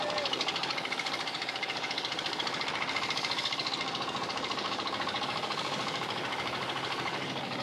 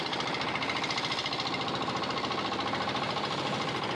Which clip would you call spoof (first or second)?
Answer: first